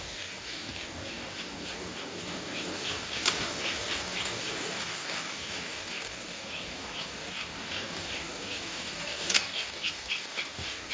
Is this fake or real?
fake